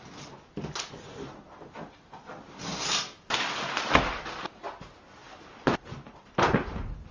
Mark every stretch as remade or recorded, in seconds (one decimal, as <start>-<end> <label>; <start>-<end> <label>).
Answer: 0.0-7.1 recorded